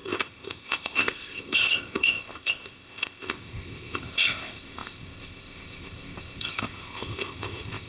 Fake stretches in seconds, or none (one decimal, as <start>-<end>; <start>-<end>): 0.0-7.9